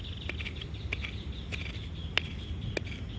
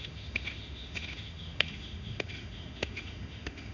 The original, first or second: first